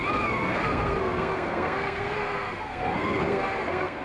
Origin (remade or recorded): remade